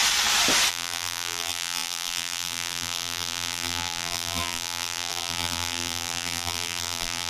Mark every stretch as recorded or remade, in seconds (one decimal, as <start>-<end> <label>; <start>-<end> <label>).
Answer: 0.0-0.7 recorded; 0.7-7.3 remade